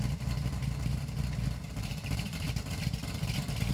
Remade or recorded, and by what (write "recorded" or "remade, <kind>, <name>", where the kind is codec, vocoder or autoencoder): remade, vocoder, BigVGAN v2